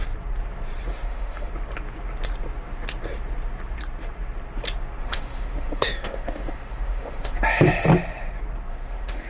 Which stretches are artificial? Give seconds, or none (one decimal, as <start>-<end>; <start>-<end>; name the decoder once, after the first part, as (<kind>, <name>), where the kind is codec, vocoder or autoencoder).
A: 0.9-1.5 (autoencoder, DAC-VAE); 5.0-7.4; 8.7-9.3